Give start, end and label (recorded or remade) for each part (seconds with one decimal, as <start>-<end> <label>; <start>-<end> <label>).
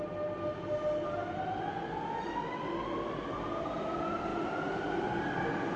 0.0-5.8 recorded